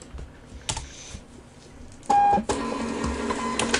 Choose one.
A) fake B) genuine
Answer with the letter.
B